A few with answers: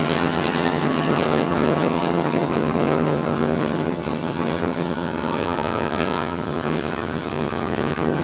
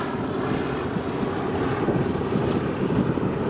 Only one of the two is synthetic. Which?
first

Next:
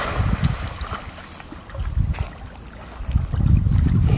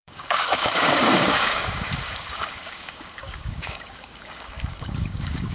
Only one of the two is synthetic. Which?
second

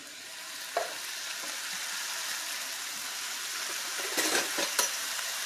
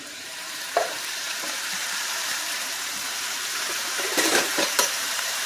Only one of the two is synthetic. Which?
second